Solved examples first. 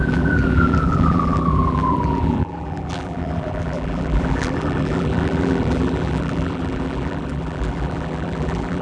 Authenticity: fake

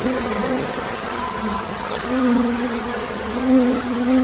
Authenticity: fake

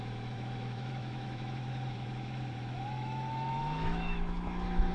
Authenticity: fake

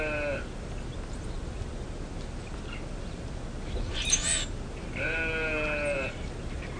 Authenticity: real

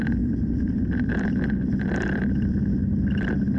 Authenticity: real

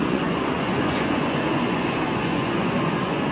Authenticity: fake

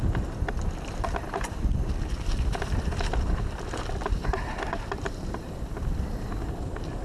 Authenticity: fake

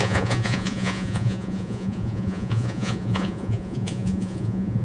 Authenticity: fake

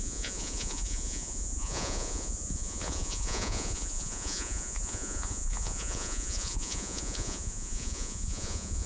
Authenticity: fake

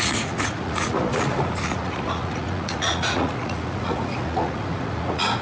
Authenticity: fake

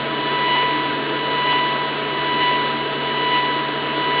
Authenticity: real